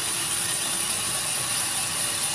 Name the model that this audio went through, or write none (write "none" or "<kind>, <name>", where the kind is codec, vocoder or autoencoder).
none